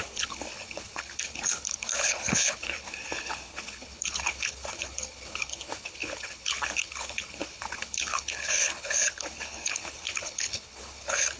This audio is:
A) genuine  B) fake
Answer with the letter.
B